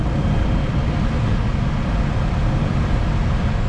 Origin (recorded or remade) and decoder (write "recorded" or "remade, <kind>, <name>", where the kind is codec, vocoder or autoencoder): recorded